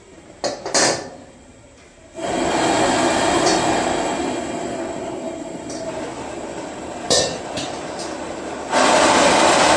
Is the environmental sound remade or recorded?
recorded